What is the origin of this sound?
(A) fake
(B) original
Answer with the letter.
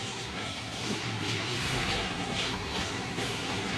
A